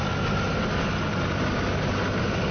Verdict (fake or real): real